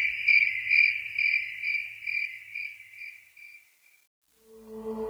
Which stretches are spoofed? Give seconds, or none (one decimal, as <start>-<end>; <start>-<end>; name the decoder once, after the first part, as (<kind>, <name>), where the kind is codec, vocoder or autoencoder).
none